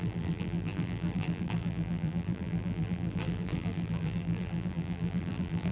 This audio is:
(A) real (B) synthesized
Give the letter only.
B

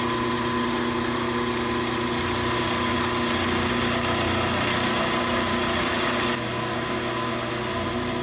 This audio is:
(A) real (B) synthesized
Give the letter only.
A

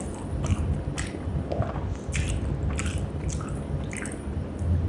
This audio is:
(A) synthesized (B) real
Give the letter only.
B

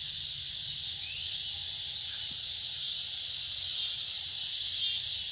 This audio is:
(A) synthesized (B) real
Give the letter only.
B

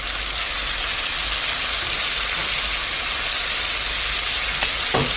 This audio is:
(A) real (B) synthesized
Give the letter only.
A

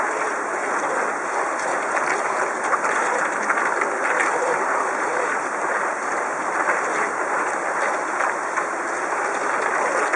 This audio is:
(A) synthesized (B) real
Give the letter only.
A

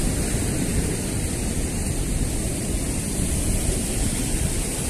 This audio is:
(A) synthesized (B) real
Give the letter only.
B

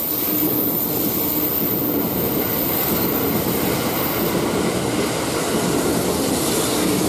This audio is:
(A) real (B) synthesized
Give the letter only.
A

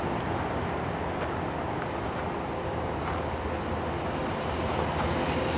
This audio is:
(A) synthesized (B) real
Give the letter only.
B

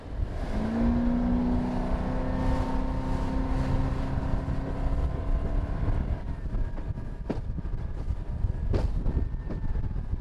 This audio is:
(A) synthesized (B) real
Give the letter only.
B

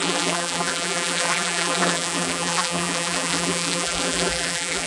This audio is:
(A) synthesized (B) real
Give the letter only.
A